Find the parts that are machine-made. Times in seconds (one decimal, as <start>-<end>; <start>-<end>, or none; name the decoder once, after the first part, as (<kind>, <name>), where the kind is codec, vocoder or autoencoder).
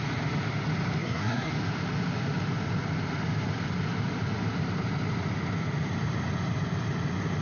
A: 1.0-1.5 (codec, SNAC)